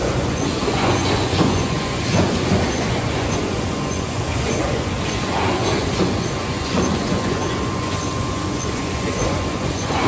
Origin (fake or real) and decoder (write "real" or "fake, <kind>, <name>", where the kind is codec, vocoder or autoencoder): fake, vocoder, Vocos